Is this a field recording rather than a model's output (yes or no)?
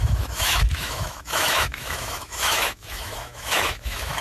no